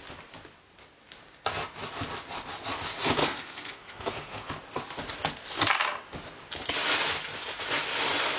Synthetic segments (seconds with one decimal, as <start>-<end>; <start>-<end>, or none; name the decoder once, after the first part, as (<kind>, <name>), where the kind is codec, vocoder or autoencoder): 3.2-4.5 (codec, SNAC)